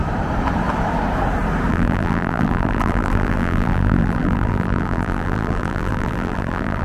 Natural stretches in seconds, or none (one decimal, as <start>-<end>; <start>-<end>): 0.0-1.7